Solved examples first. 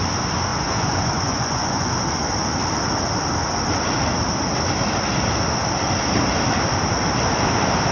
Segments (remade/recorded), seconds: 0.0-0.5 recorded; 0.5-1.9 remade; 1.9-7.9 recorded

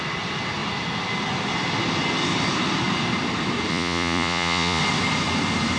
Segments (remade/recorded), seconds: 0.0-3.7 recorded; 3.7-4.8 remade; 4.8-5.8 recorded

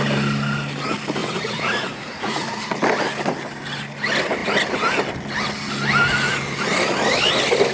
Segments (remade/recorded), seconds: 0.0-1.2 recorded; 1.2-2.6 remade; 2.6-7.7 recorded

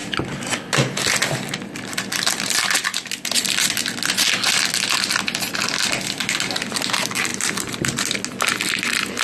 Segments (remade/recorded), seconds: 0.0-7.3 recorded; 7.3-7.8 remade; 7.8-9.2 recorded

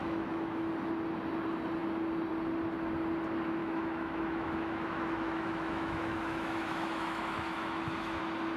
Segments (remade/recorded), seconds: 0.0-0.7 remade; 0.7-3.6 recorded; 3.6-8.2 remade; 8.2-8.6 recorded

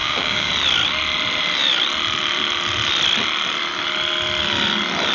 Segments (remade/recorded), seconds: 0.0-0.5 remade; 0.5-5.1 recorded